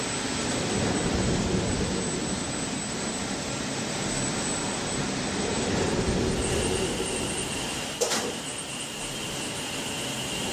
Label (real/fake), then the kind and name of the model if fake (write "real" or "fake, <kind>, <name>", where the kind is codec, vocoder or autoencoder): fake, vocoder, BigVGAN v2